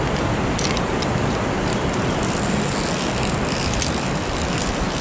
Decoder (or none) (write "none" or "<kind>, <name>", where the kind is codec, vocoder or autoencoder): none